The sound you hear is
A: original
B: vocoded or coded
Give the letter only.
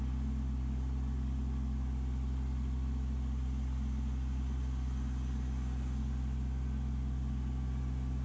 A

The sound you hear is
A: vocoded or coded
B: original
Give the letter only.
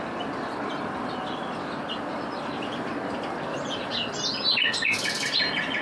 B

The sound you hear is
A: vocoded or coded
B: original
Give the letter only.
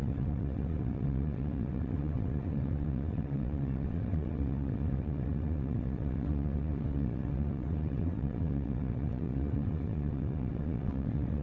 A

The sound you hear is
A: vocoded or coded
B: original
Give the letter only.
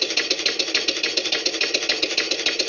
B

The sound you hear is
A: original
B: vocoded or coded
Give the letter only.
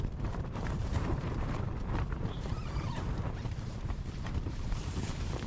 B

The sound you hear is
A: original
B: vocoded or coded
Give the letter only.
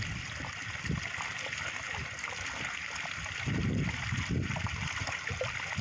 A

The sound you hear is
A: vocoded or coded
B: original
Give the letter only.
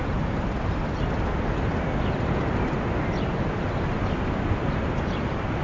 B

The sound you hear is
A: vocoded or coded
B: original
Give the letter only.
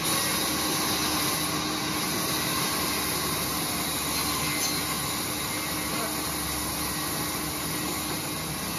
B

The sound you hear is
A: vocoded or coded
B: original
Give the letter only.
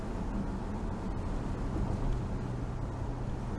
B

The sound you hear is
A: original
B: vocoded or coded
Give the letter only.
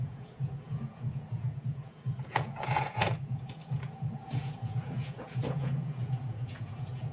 B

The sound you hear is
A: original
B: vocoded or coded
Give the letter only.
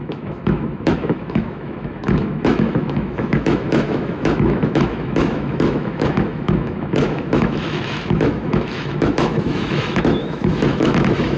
B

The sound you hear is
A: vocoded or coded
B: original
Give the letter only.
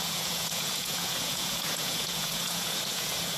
A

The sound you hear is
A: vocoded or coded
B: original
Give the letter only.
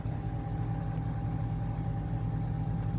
B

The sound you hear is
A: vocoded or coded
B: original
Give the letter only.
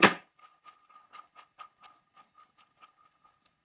A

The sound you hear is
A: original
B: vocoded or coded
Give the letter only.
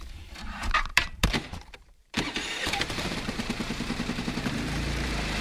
B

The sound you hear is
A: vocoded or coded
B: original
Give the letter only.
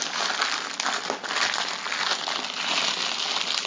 B